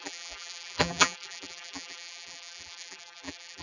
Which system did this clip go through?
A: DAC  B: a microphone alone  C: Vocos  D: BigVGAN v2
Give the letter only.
D